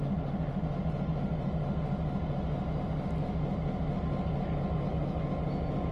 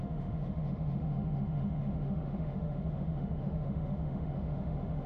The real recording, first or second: first